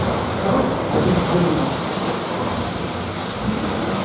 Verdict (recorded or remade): recorded